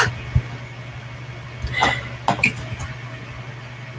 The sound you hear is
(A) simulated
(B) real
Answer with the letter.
B